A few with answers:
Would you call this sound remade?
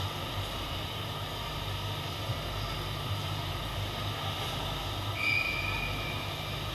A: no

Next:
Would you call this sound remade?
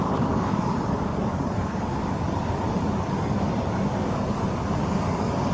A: yes